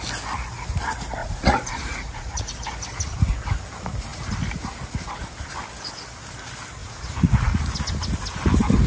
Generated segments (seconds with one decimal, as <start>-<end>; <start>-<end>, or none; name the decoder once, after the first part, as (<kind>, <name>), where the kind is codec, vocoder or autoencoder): 1.2-2.7 (vocoder, Vocos); 6.8-7.7